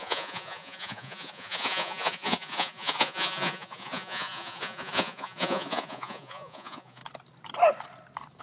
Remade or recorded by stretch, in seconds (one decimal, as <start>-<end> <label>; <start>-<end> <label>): 0.0-7.0 remade; 7.0-8.4 recorded